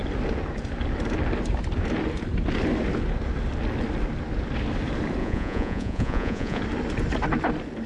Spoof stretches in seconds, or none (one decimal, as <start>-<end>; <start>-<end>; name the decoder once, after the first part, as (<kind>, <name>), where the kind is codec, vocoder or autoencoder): 5.2-6.6 (vocoder, Vocos)